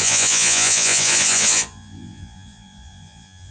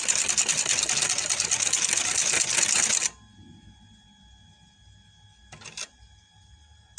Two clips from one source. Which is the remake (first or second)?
first